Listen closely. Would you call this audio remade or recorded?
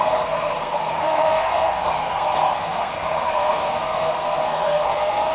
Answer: remade